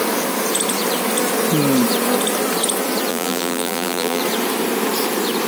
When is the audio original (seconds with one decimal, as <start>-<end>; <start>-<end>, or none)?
0.0-3.1; 4.2-5.5